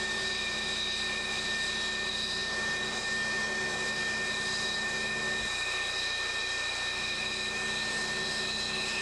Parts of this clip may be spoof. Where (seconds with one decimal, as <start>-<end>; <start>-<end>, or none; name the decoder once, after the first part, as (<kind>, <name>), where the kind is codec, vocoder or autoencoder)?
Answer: none